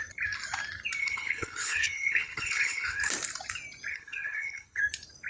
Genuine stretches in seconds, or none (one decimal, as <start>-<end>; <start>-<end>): 0.0-1.0; 3.1-3.9; 4.8-5.3